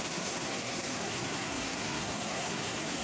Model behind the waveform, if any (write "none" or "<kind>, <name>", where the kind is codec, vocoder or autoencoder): codec, SNAC